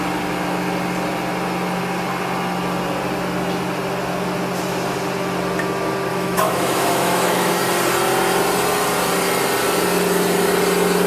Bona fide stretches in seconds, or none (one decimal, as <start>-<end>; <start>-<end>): 0.0-6.1; 7.6-11.1